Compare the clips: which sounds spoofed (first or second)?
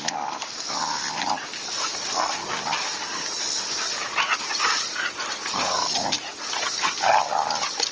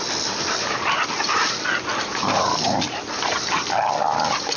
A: second